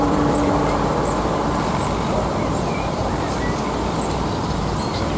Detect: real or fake fake